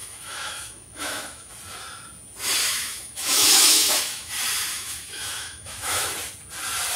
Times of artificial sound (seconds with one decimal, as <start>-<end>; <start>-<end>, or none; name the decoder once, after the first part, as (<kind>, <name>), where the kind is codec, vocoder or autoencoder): 0.0-1.5 (autoencoder, DAC-VAE); 2.6-4.3; 4.7-6.1